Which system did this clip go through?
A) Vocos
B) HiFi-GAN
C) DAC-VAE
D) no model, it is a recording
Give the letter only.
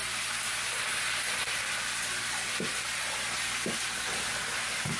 D